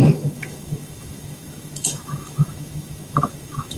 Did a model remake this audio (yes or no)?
yes